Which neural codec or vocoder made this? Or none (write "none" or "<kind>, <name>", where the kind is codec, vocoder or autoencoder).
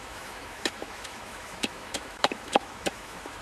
autoencoder, DAC-VAE